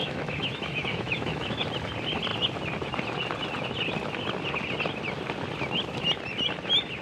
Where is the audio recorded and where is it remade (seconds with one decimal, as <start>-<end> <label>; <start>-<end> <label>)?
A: 0.0-1.6 remade; 1.6-7.0 recorded